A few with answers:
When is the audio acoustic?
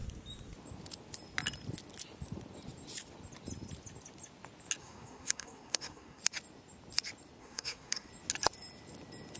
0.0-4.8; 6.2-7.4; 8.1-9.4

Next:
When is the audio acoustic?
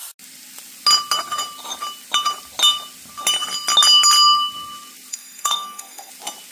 0.0-5.1; 6.1-6.5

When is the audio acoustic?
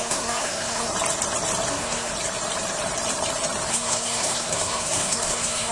0.9-1.7; 2.1-3.7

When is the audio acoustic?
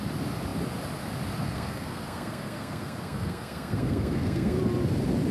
0.0-1.4; 4.6-5.3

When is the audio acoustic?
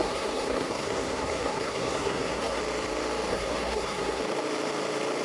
2.6-3.3; 4.2-5.2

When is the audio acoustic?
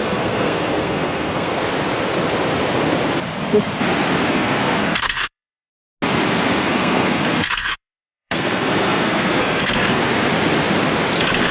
1.6-4.3; 5.7-6.6; 10.0-11.5